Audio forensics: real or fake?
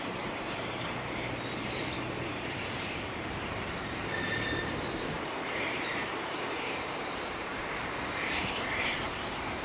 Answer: fake